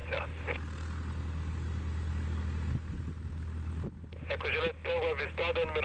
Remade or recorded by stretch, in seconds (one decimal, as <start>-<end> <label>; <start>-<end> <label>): 0.0-5.8 recorded